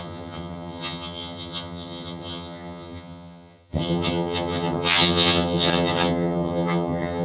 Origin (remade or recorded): remade